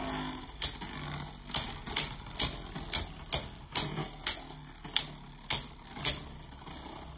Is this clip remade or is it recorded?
recorded